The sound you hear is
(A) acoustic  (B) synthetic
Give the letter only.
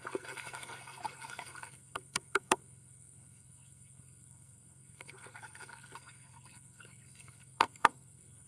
B